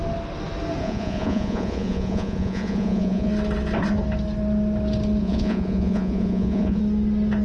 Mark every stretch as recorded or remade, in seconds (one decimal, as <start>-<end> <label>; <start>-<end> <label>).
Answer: 0.0-0.8 recorded; 0.8-3.3 remade; 3.3-5.2 recorded; 5.2-6.8 remade; 6.8-7.4 recorded